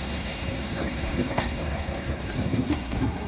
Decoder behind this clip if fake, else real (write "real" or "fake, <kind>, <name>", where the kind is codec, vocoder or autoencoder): fake, codec, SNAC